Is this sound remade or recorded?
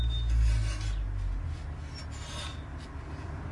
recorded